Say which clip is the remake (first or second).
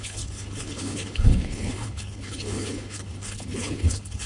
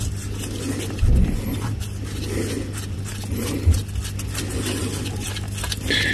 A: first